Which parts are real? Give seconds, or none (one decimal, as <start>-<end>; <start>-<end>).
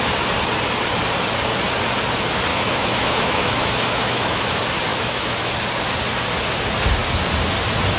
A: 0.0-2.5; 4.4-4.9; 5.5-8.0